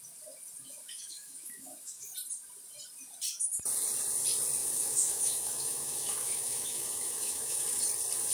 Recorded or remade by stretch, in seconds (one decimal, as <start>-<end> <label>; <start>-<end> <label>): 0.0-0.7 recorded; 0.7-2.1 remade; 2.1-4.6 recorded; 4.6-7.8 remade; 7.8-8.3 recorded